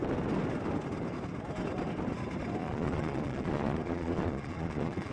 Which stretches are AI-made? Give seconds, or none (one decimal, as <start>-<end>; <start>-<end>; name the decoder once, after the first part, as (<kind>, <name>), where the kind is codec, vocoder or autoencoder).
2.6-5.1 (vocoder, Vocos)

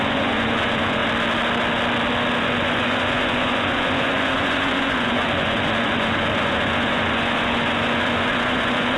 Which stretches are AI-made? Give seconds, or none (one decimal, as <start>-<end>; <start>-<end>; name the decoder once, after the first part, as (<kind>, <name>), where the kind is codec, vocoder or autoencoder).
0.0-1.0 (vocoder, Vocos); 2.4-9.0

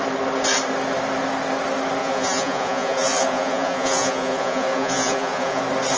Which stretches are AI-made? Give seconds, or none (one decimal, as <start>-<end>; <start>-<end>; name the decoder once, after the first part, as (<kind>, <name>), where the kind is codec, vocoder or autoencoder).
2.0-5.6 (vocoder, Vocos)

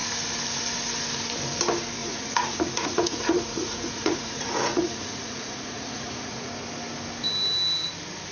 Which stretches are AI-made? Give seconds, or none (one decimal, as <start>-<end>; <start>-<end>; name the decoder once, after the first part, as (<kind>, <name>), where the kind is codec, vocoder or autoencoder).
2.0-6.5 (vocoder, Vocos)

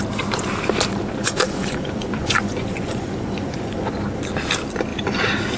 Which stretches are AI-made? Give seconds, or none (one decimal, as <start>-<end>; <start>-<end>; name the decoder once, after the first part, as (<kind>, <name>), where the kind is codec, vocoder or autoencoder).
1.2-3.9 (vocoder, Vocos)